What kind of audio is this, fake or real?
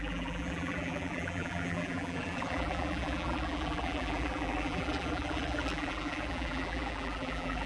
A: fake